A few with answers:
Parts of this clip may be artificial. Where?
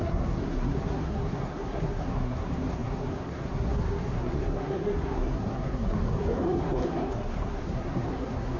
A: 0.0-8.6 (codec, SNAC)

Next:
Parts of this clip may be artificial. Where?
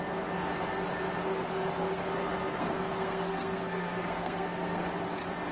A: 1.5-4.8 (codec, SNAC)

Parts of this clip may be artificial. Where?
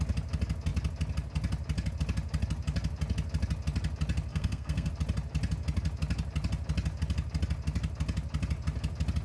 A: 4.3-4.9 (codec, SNAC)